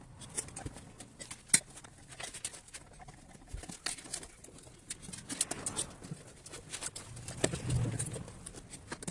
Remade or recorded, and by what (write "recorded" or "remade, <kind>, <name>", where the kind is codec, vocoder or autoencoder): recorded